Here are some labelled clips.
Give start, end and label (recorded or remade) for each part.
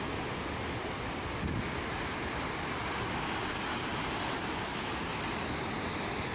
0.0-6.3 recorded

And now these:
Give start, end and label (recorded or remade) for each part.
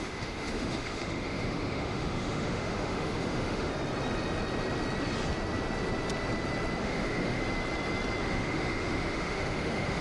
0.0-3.7 remade; 3.7-6.8 recorded; 6.8-7.4 remade; 7.4-8.2 recorded; 8.2-10.0 remade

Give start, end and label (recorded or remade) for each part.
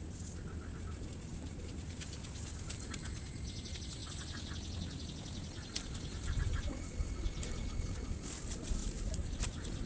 0.0-1.3 recorded; 1.3-2.2 remade; 2.2-8.8 recorded; 8.8-9.4 remade; 9.4-9.9 recorded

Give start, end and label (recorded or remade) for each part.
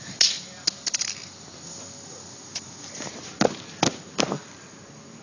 0.0-5.2 recorded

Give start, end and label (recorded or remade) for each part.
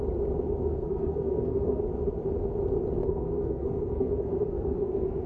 0.0-0.6 recorded; 0.6-1.8 remade; 1.8-3.0 recorded; 3.0-5.3 remade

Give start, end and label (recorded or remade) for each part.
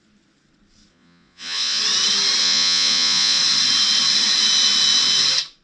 0.0-0.9 recorded; 0.9-1.8 remade; 1.8-2.4 recorded; 2.4-3.4 remade; 3.4-5.6 recorded